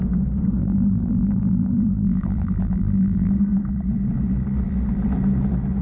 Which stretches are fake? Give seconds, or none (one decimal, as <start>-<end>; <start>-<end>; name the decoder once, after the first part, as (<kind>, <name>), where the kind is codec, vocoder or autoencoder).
0.6-3.3 (vocoder, BigVGAN v2)